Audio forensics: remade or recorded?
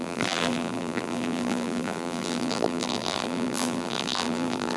remade